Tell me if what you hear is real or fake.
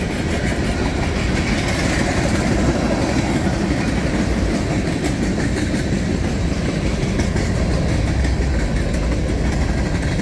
real